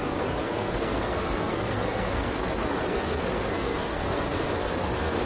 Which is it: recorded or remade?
remade